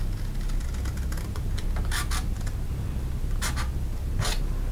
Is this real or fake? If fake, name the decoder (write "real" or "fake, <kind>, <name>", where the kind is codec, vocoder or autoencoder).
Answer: real